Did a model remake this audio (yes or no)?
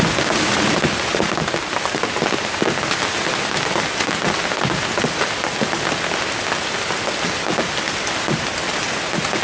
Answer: no